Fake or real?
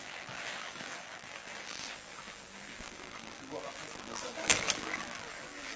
fake